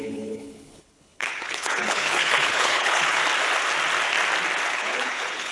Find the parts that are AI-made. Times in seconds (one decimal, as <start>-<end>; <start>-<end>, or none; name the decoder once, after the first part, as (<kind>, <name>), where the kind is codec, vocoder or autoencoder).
0.0-3.2 (codec, HILCodec); 4.7-5.5